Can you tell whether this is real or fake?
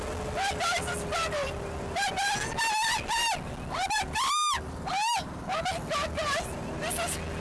real